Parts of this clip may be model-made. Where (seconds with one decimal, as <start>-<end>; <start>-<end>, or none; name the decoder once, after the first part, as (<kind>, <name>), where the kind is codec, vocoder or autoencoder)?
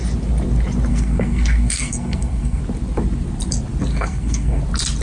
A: 0.9-2.6 (codec, SNAC); 3.9-4.6